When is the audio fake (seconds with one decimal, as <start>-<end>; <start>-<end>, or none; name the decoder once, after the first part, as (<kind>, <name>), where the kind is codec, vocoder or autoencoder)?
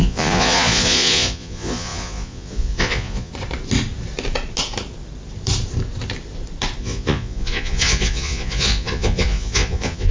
0.0-3.3 (vocoder, Vocos); 6.8-10.1